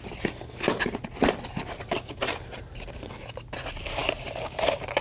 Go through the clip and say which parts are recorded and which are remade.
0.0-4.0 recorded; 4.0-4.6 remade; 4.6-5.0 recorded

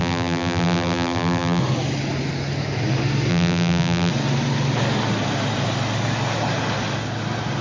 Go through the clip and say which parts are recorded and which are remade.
0.0-1.6 remade; 1.6-3.3 recorded; 3.3-4.1 remade; 4.1-7.6 recorded